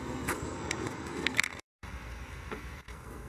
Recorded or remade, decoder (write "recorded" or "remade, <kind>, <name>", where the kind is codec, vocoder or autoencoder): remade, codec, SNAC